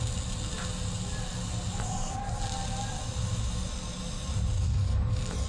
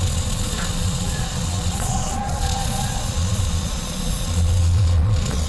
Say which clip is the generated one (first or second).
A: second